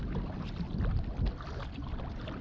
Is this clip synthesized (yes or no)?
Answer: no